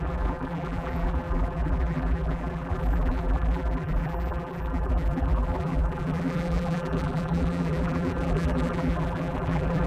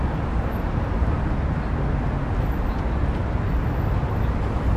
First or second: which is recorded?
second